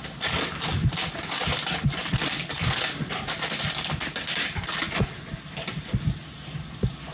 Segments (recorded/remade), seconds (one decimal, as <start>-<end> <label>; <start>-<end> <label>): 0.0-7.1 recorded

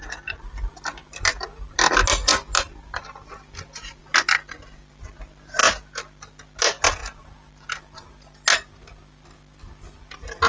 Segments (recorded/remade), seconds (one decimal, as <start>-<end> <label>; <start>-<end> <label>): 0.0-10.5 recorded

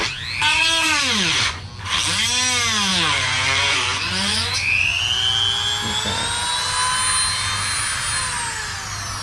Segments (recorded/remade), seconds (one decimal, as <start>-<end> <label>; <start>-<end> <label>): 0.0-0.5 recorded; 0.5-1.7 remade; 1.7-2.9 recorded; 2.9-5.0 remade; 5.0-9.2 recorded